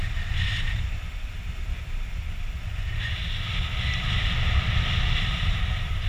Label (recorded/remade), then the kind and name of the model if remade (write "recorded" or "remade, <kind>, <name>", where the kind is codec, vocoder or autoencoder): recorded